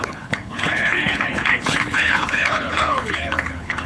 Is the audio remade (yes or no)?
yes